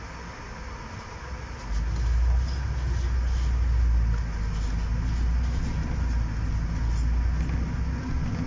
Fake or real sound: real